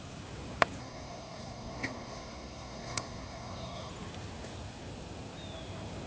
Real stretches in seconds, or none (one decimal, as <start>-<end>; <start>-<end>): 0.0-0.8; 3.9-6.1